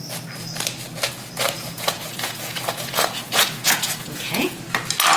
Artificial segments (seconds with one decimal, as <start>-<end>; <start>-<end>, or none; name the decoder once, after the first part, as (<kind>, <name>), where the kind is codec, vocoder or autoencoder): 1.7-4.6 (vocoder, Vocos)